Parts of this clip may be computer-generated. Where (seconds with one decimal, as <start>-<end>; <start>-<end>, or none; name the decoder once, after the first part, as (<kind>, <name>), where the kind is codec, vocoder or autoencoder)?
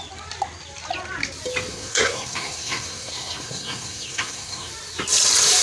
1.7-4.7 (codec, SNAC)